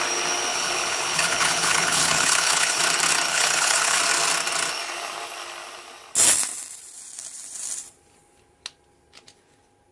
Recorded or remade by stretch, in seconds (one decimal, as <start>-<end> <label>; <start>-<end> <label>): 0.0-0.5 recorded; 0.5-2.8 remade; 2.8-3.3 recorded; 3.3-4.0 remade; 4.0-9.9 recorded